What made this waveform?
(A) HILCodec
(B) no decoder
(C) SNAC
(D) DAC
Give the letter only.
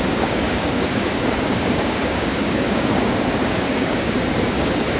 D